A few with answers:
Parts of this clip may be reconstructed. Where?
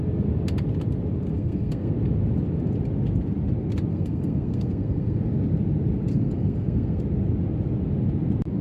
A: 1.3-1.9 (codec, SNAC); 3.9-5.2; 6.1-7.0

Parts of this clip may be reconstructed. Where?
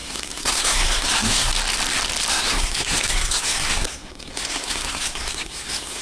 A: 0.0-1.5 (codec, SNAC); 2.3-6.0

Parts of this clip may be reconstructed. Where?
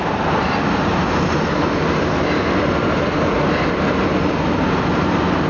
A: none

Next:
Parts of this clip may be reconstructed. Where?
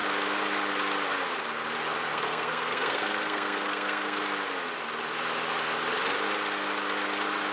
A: 2.1-4.2 (codec, SNAC)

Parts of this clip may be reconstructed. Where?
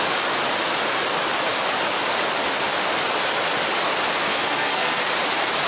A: 4.3-5.0 (codec, SNAC)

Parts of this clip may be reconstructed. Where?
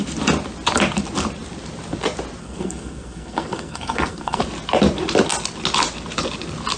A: 2.4-4.4 (codec, SNAC)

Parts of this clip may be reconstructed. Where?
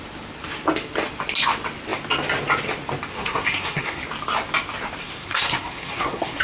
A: 3.1-4.0 (codec, SNAC); 5.0-6.4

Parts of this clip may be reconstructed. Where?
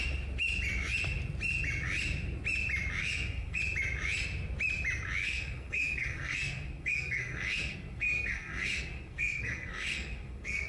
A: 3.0-3.6 (codec, SNAC); 5.2-10.7